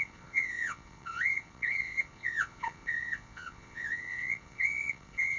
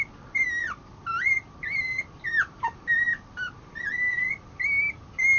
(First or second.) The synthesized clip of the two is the first